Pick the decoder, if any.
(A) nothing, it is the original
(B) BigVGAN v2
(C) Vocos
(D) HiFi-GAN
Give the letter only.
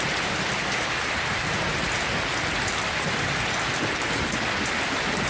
A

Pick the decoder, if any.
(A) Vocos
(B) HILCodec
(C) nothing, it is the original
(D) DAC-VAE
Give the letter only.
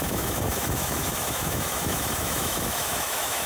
D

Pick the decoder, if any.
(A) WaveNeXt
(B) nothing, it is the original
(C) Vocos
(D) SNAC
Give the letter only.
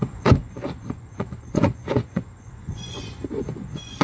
C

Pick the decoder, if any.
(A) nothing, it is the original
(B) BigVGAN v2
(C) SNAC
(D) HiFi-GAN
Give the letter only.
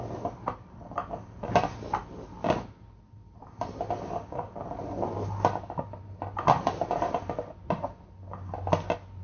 A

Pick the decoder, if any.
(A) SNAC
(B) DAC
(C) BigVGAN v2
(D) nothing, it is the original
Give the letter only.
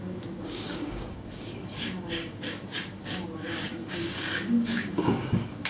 B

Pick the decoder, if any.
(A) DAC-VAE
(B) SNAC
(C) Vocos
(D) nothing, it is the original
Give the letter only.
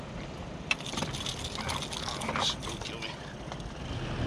D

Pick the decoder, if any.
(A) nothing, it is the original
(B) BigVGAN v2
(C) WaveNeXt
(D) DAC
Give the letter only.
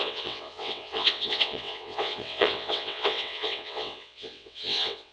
C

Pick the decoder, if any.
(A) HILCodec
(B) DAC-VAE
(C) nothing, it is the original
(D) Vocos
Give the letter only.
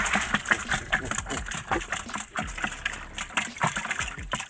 C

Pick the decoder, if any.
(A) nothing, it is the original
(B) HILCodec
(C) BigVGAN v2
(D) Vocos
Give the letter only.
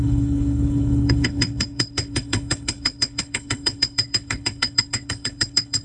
B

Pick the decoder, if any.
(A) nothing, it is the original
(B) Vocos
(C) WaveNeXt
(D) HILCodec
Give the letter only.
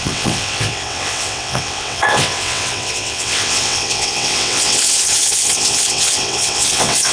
C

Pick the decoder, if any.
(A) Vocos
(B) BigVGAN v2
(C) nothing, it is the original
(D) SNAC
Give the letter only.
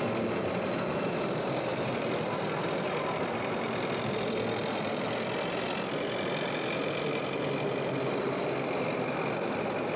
C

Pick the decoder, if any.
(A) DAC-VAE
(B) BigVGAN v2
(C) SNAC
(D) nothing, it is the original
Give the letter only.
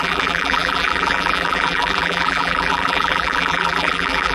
B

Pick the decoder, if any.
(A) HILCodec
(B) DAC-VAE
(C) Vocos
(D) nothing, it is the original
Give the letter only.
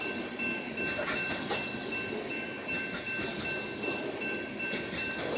D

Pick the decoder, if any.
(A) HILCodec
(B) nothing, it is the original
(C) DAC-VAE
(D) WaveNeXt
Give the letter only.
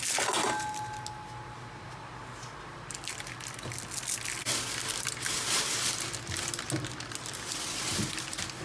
B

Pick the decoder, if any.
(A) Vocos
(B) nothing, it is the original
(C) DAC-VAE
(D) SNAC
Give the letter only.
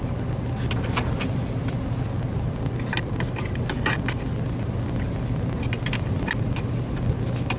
B